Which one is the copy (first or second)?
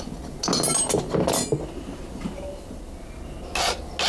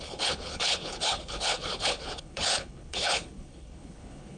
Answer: second